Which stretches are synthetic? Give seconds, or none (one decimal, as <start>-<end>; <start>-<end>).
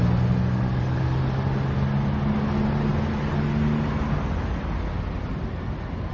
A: none